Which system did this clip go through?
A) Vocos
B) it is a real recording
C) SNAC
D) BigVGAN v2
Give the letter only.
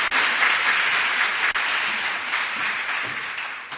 B